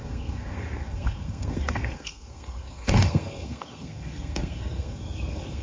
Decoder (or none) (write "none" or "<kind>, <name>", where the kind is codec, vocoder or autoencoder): codec, SNAC